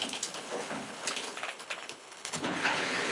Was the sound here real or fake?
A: fake